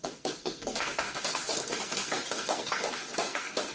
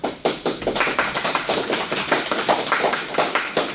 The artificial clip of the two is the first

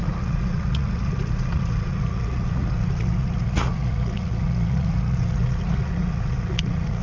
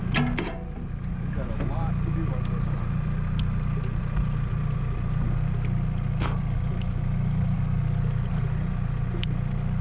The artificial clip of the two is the first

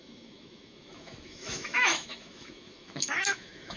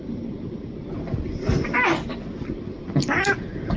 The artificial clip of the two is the first